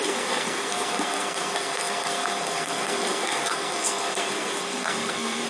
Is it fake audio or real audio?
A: fake